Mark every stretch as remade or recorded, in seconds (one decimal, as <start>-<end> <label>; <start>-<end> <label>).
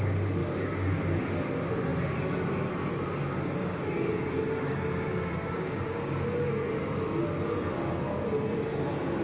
0.0-0.4 recorded; 0.4-1.2 remade; 1.2-1.9 recorded; 1.9-2.5 remade; 2.5-3.6 recorded; 3.6-6.7 remade; 6.7-9.2 recorded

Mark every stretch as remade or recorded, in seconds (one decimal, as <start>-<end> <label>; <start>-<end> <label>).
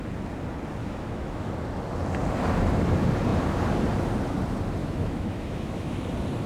0.0-0.8 recorded; 0.8-1.5 remade; 1.5-4.8 recorded; 4.8-6.0 remade; 6.0-6.5 recorded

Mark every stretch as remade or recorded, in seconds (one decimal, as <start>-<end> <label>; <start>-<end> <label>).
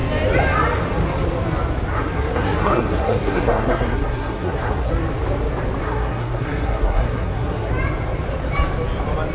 0.0-1.9 recorded; 1.9-4.9 remade; 4.9-5.8 recorded; 5.8-7.7 remade; 7.7-9.3 recorded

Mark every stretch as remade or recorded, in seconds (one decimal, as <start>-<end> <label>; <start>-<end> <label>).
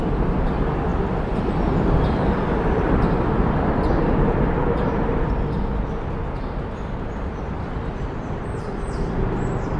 0.0-0.9 recorded; 0.9-3.0 remade; 3.0-9.8 recorded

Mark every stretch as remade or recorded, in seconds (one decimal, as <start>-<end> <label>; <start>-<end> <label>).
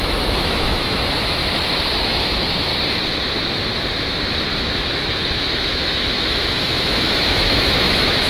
0.0-1.4 remade; 1.4-2.2 recorded; 2.2-2.7 remade; 2.7-4.6 recorded; 4.6-8.3 remade